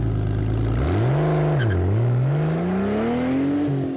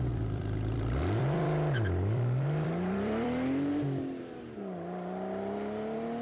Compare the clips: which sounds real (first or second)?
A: first